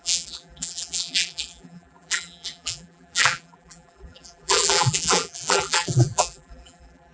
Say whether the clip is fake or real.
fake